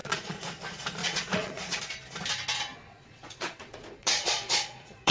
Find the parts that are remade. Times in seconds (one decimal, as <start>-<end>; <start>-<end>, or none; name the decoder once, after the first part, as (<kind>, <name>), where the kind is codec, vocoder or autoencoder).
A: 0.0-0.5 (vocoder, Vocos); 1.0-1.8; 2.7-5.1